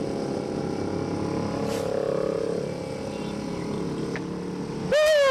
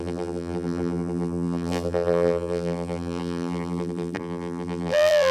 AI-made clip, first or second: second